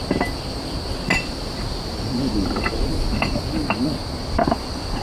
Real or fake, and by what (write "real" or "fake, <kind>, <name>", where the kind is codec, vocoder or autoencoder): real